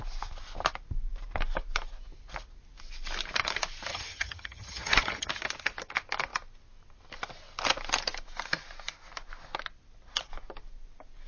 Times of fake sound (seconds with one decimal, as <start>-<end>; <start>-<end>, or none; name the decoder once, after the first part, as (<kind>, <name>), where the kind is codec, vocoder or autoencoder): 3.9-5.3 (vocoder, HiFi-GAN)